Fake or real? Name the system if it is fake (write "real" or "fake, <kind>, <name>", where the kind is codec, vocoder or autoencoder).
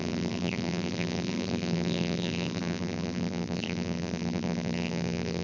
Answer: fake, vocoder, BigVGAN v2